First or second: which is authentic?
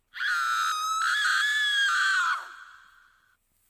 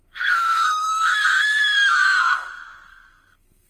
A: first